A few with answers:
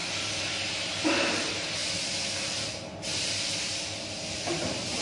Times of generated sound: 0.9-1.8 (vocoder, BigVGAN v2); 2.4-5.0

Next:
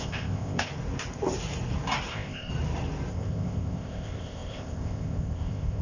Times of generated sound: 0.0-0.7 (codec, ZipCodec); 2.1-2.5; 3.1-5.8

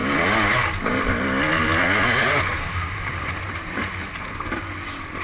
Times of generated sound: 2.8-3.7 (vocoder, BigVGAN v2)